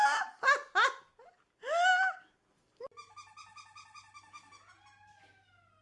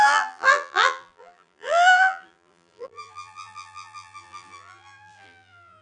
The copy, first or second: second